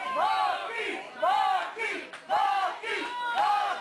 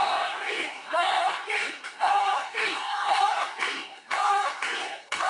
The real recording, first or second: first